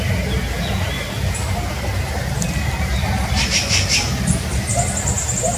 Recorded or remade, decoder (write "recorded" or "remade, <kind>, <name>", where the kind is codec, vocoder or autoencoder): recorded